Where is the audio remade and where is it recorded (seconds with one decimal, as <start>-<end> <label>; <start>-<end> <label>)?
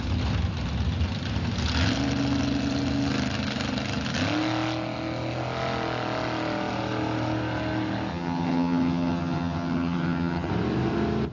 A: 0.0-8.1 recorded; 8.1-10.5 remade; 10.5-11.3 recorded